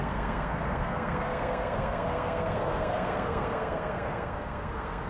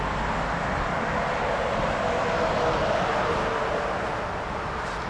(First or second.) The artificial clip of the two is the first